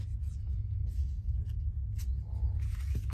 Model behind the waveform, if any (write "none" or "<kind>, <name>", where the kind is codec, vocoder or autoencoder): none